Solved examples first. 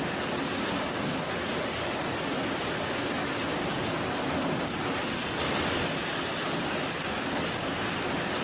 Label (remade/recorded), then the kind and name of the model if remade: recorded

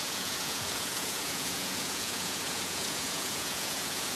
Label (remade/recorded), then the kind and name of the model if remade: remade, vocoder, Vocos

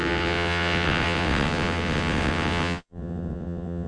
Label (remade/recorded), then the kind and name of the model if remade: remade, vocoder, WaveNeXt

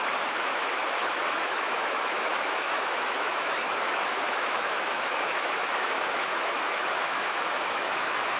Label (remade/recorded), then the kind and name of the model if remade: remade, autoencoder, DAC-VAE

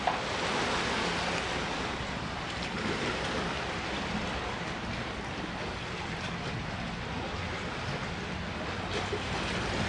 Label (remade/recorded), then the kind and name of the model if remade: recorded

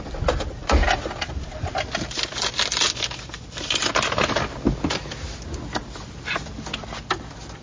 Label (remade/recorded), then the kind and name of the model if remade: recorded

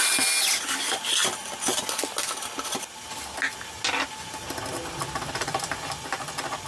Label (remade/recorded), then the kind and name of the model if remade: recorded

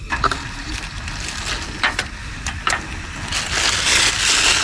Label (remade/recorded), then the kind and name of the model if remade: recorded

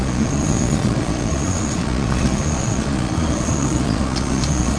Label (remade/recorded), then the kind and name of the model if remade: remade, vocoder, Vocos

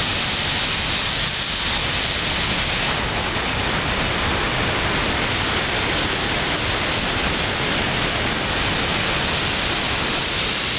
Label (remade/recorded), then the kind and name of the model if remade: recorded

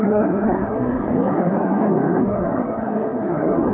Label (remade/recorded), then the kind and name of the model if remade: remade, codec, SNAC